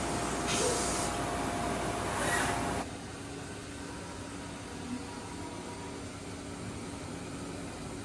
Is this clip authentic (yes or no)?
yes